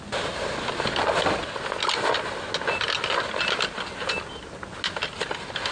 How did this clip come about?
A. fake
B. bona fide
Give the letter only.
B